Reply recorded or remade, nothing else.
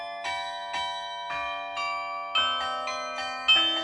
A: recorded